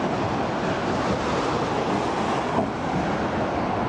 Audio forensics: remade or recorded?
recorded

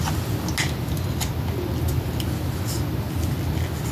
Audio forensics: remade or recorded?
recorded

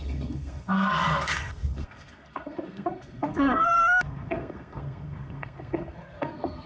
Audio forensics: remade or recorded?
remade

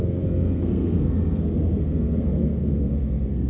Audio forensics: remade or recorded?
remade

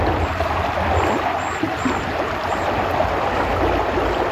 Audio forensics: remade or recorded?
recorded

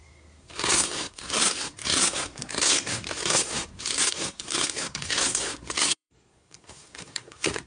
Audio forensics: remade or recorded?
remade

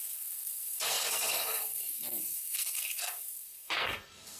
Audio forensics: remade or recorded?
remade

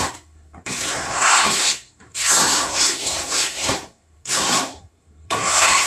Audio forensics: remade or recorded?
remade